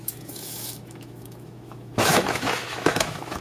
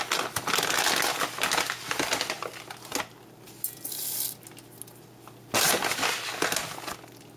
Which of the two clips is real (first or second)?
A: second